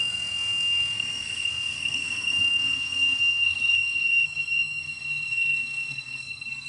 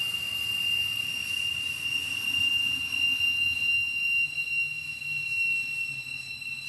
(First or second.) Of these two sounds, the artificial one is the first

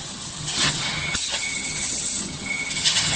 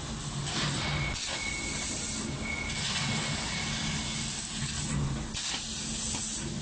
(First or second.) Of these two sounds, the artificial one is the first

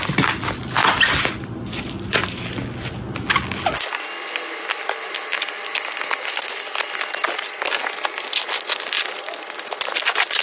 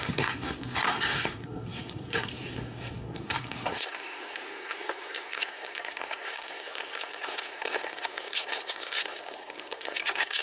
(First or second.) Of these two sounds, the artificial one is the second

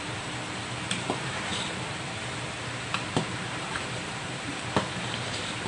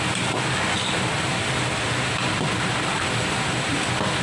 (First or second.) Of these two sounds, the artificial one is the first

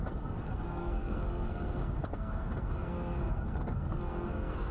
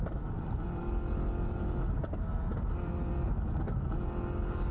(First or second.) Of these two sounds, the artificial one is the first